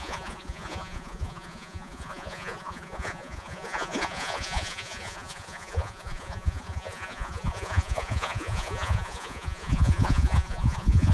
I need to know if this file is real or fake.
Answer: fake